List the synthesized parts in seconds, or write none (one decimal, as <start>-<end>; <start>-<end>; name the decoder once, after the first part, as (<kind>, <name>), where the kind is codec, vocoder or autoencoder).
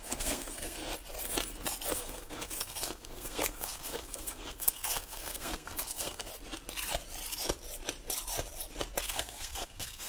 0.0-0.9 (codec, SNAC); 1.9-6.3; 9.0-10.1